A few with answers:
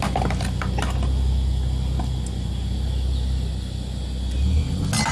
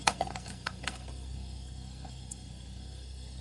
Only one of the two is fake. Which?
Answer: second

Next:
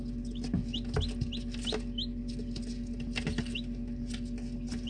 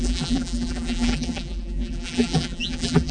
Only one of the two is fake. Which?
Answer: second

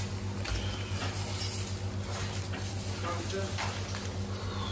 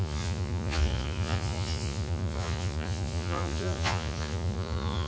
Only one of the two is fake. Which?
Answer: second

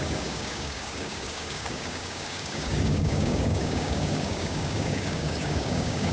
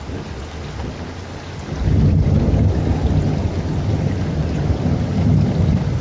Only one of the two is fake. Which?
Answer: first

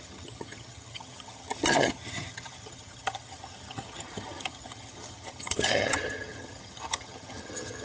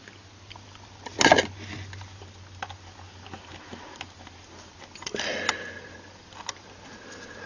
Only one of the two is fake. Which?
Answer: first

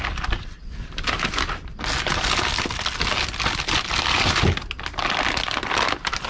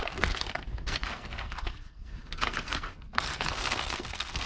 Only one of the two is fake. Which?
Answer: second